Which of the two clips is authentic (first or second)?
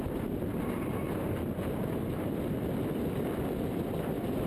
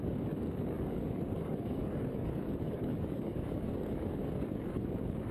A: first